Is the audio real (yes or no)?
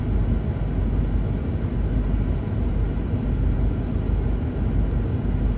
yes